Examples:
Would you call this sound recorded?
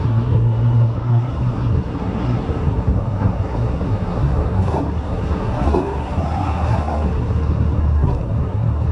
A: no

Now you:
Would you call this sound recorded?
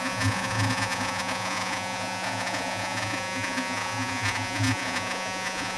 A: no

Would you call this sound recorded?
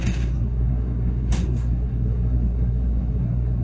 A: no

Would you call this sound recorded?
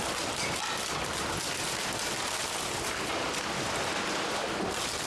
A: yes